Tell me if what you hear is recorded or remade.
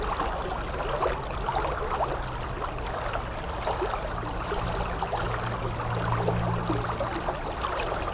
recorded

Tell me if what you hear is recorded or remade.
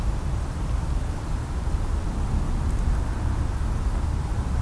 recorded